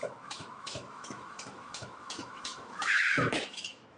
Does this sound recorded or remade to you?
remade